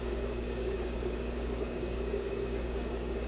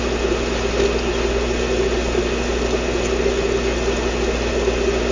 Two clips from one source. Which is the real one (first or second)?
second